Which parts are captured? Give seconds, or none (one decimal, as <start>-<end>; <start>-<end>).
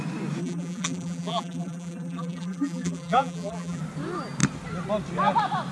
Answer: 0.0-0.4; 3.8-5.7